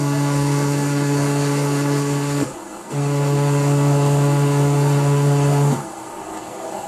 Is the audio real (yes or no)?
no